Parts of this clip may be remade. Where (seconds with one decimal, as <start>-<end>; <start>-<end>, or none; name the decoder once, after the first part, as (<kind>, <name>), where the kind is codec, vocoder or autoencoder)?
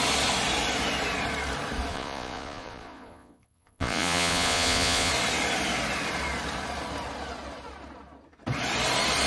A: 1.9-5.1 (vocoder, Vocos)